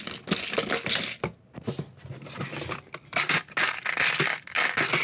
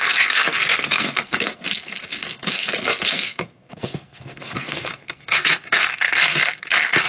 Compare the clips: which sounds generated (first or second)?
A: second